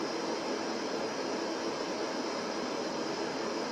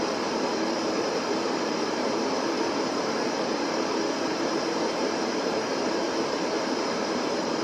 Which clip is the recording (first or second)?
first